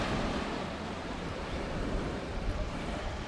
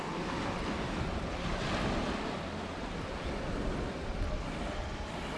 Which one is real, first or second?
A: second